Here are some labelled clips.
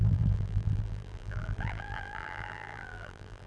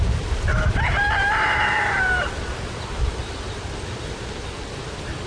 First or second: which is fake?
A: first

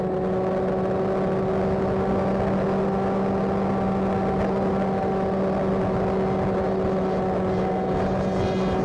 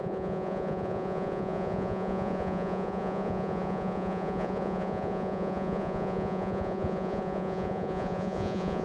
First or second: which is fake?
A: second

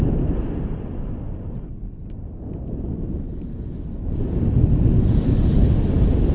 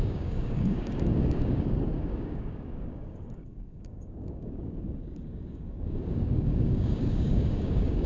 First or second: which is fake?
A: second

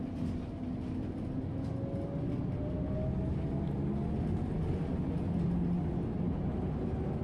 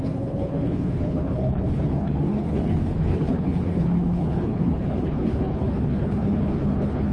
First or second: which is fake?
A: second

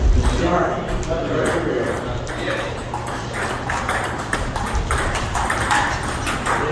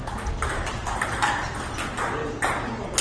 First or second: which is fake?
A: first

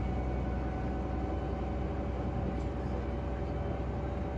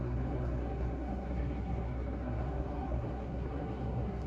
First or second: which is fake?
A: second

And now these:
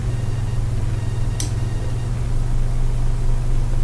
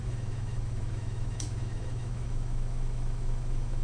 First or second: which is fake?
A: second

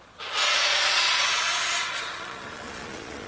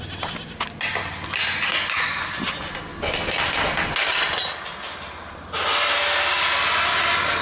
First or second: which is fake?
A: first